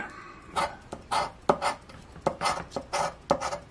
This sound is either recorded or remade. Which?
recorded